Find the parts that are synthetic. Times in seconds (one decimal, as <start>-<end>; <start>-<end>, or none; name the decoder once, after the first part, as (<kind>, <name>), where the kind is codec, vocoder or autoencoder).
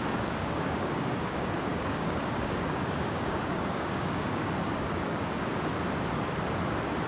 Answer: 0.0-5.7 (codec, DAC)